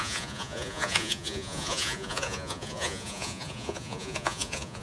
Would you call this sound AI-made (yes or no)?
yes